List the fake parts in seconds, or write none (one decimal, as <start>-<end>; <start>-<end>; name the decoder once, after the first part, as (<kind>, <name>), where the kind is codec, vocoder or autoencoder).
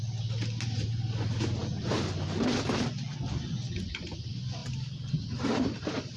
4.6-6.2 (vocoder, BigVGAN v2)